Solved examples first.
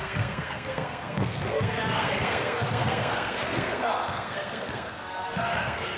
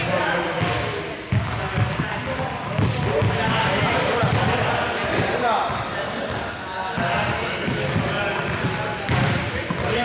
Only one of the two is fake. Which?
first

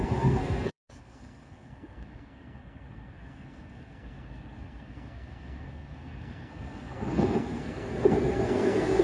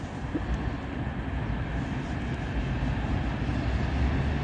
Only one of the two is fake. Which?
first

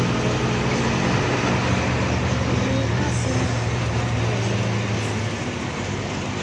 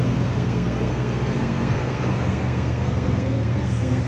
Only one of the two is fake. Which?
second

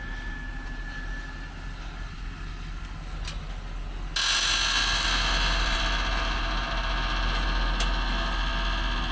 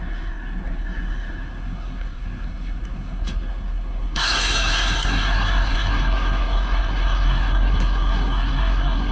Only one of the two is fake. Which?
second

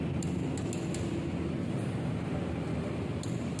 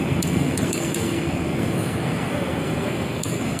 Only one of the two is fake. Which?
second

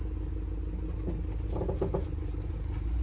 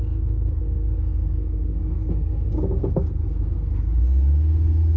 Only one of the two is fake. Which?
second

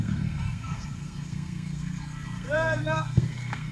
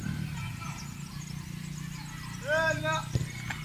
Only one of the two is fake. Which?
first